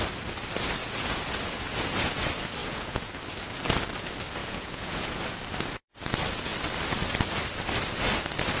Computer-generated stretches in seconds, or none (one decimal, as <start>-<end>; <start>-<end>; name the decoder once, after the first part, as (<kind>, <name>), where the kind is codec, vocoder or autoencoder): 0.8-2.2 (vocoder, Vocos); 2.6-3.1; 4.4-5.2